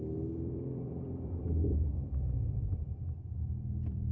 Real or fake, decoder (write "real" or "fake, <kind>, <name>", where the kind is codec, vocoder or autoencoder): fake, vocoder, BigVGAN v2